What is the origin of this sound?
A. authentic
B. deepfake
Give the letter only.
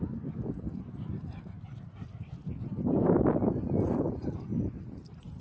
A